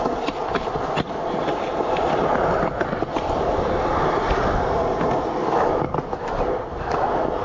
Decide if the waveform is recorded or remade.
recorded